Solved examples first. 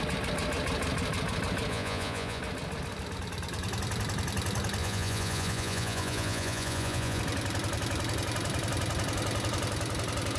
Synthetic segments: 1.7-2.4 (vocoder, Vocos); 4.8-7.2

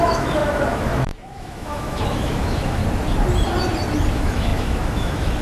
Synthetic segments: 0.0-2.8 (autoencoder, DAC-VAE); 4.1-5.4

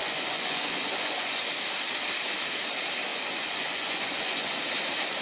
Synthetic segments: 0.0-1.4 (vocoder, Vocos); 3.1-4.6

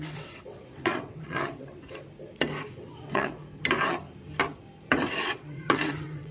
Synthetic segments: 0.0-1.7 (vocoder, WaveNeXt); 2.8-3.4; 5.2-6.3

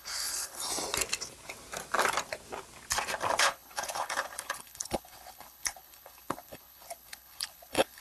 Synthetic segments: 0.0-0.7 (codec, HILCodec); 3.4-8.0

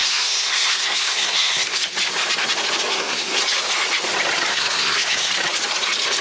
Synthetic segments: 0.0-1.8 (codec, SNAC); 2.9-3.4; 4.5-5.3